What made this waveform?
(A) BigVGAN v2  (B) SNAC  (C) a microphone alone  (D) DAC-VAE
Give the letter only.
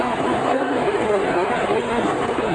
B